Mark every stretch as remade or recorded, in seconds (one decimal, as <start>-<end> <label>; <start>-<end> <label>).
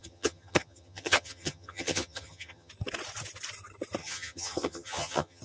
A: 0.0-2.7 remade; 2.7-4.0 recorded; 4.0-5.4 remade